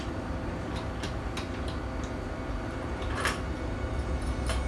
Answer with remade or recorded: recorded